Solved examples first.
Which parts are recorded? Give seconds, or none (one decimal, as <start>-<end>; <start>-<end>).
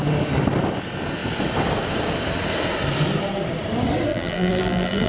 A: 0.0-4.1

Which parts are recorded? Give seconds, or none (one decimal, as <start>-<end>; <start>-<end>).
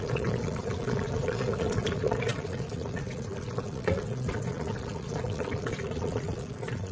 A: none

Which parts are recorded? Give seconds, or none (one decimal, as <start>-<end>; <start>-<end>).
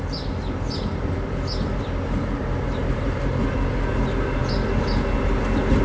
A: 0.0-5.8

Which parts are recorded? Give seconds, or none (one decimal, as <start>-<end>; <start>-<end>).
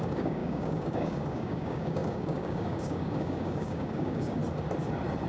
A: 4.4-5.3